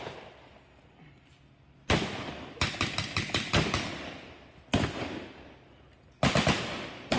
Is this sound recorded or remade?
recorded